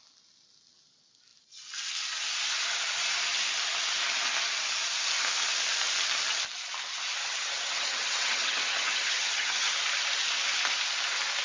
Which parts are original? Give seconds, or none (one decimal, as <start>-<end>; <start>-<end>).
0.0-7.2; 9.7-11.4